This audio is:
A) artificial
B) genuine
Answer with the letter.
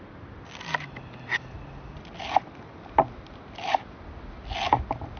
B